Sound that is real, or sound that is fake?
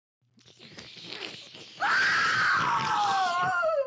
real